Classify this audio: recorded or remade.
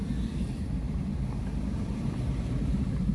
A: remade